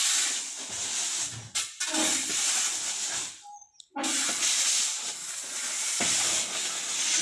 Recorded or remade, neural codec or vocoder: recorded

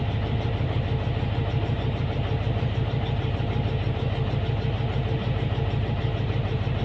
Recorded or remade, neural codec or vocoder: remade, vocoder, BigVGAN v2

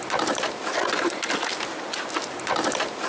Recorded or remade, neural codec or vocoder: recorded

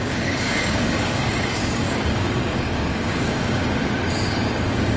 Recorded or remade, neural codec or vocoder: remade, codec, DAC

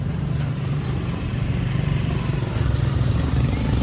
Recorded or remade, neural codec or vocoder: remade, vocoder, BigVGAN v2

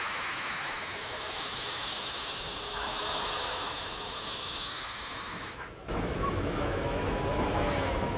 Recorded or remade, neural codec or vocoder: remade, autoencoder, DAC-VAE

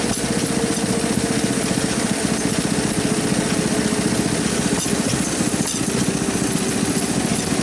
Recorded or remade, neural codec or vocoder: recorded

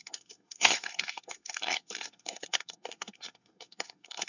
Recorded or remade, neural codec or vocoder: remade, codec, SNAC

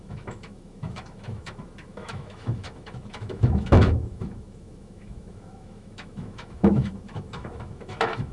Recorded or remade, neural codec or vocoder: remade, autoencoder, DAC-VAE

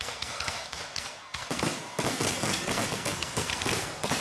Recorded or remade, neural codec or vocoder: remade, codec, SNAC